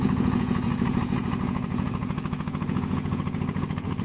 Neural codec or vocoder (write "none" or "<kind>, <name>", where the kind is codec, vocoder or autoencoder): vocoder, Vocos